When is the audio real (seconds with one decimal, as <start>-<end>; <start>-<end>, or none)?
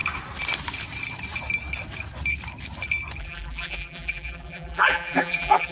0.0-3.2